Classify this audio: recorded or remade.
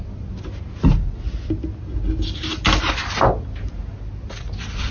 recorded